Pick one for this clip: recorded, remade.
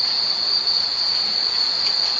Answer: remade